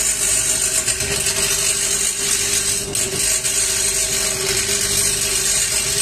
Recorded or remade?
recorded